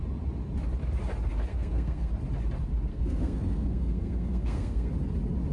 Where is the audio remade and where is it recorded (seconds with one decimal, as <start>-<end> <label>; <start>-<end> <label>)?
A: 0.0-1.5 recorded; 1.5-2.1 remade; 2.1-2.9 recorded; 2.9-4.9 remade; 4.9-5.5 recorded